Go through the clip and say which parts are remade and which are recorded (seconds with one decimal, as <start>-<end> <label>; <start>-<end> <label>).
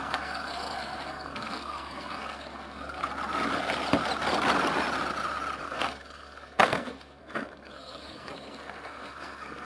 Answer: 0.0-3.0 remade; 3.0-5.6 recorded; 5.6-9.7 remade